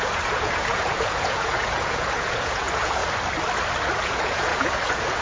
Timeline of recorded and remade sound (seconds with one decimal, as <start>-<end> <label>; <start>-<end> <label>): 0.0-3.0 remade; 3.0-4.0 recorded; 4.0-5.2 remade